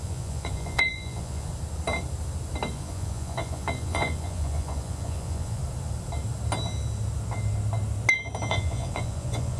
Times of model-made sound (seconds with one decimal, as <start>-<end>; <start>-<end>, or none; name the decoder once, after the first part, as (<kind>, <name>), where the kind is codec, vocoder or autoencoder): 0.0-1.5 (vocoder, Vocos); 2.7-5.6; 8.5-9.6